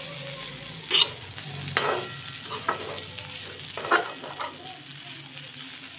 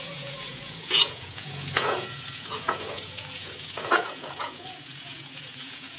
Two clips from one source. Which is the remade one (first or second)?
second